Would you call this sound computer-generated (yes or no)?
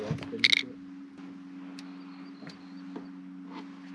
no